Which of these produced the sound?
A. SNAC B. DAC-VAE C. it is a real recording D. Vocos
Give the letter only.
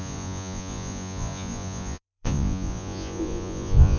D